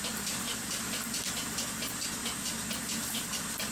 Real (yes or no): yes